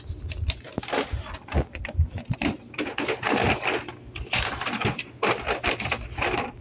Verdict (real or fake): real